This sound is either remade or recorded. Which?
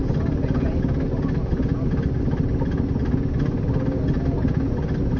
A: recorded